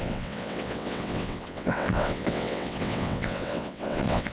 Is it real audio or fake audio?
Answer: fake